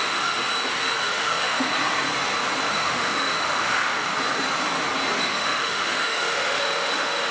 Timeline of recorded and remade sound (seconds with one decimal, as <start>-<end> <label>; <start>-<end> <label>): 0.0-0.4 remade; 0.4-1.0 recorded; 1.0-1.7 remade; 1.7-2.7 recorded; 2.7-4.1 remade; 4.1-5.2 recorded; 5.2-7.3 remade